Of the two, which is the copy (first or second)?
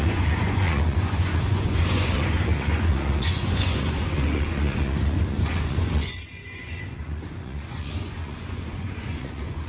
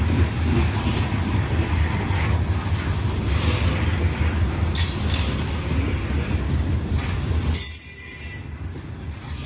first